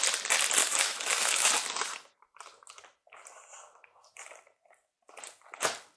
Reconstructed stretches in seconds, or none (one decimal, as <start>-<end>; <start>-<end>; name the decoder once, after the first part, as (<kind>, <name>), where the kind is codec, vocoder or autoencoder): 0.6-1.5 (autoencoder, DAC-VAE)